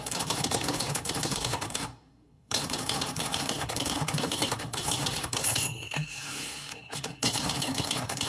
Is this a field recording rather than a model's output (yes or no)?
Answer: no